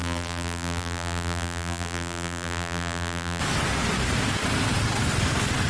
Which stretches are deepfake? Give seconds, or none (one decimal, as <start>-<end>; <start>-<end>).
0.0-3.4